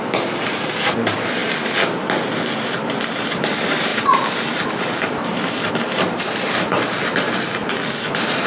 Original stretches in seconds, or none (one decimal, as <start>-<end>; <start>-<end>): 1.4-2.2; 7.6-8.1